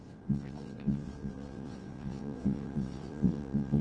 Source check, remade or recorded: remade